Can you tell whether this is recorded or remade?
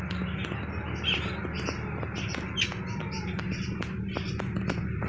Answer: recorded